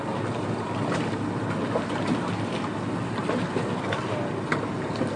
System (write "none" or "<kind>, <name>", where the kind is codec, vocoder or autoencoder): none